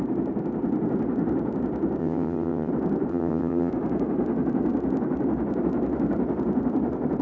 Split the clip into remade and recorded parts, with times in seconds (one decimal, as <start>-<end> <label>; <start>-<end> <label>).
0.0-2.0 recorded; 2.0-2.7 remade; 2.7-3.1 recorded; 3.1-3.7 remade; 3.7-7.2 recorded